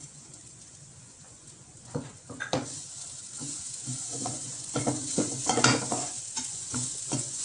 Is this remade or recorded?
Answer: remade